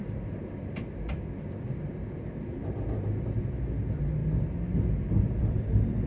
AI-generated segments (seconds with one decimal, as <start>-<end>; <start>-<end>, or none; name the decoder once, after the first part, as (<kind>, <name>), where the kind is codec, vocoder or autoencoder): none